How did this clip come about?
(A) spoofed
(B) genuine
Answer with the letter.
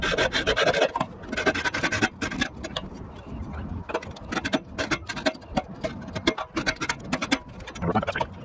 B